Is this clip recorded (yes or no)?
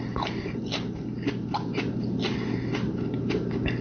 yes